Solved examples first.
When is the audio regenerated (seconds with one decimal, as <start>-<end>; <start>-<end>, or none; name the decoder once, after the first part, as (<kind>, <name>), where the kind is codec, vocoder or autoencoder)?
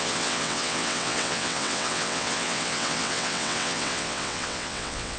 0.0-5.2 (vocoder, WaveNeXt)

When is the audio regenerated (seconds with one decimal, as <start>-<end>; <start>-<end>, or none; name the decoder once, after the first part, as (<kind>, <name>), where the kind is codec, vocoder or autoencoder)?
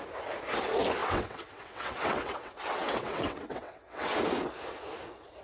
1.0-4.2 (vocoder, WaveNeXt)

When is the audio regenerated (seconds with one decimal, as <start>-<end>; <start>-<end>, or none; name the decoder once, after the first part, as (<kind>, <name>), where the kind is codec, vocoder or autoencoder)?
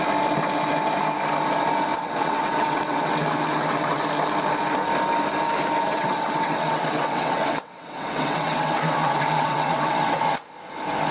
1.9-4.0 (vocoder, WaveNeXt); 5.9-10.3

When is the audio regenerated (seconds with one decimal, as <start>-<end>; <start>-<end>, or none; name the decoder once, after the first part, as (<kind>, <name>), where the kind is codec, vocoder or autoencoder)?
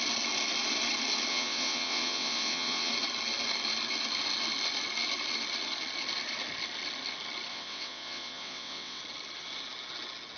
1.3-2.9 (vocoder, WaveNeXt); 7.5-9.0